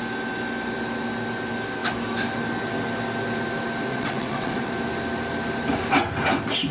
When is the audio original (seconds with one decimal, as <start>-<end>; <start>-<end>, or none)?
0.0-3.9; 4.7-6.7